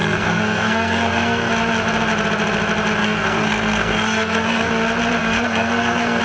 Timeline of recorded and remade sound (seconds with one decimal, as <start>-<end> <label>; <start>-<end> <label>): 0.0-1.5 remade; 1.5-3.0 recorded; 3.0-4.7 remade; 4.7-5.2 recorded; 5.2-6.2 remade